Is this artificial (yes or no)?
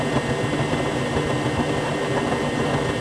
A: no